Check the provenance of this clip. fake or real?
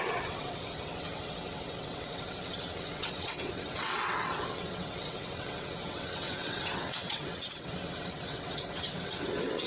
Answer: fake